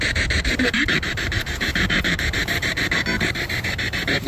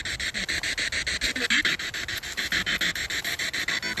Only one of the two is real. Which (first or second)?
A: second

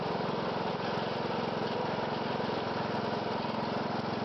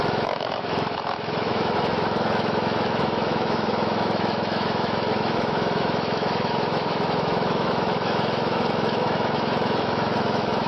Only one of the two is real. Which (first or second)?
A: first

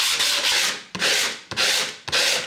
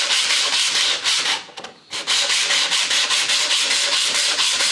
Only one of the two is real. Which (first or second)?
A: first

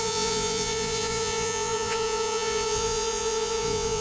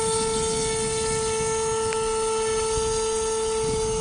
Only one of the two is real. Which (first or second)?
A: second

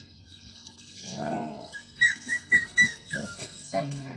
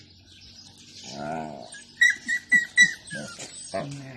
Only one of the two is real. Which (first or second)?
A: second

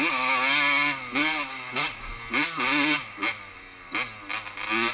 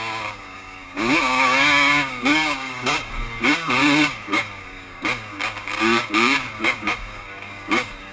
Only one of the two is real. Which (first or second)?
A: first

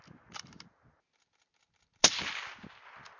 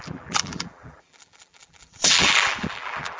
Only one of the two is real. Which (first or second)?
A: first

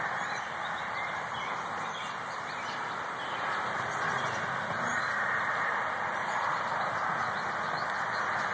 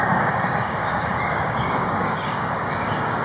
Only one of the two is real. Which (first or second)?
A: first